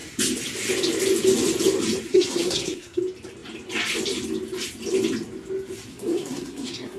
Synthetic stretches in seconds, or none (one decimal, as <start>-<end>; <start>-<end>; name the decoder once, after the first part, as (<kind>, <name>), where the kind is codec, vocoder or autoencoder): 2.1-3.0 (codec, SNAC); 5.9-7.0